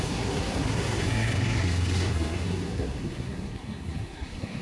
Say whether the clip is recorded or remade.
remade